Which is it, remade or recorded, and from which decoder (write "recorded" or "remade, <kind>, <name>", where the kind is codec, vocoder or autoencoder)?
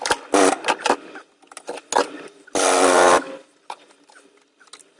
recorded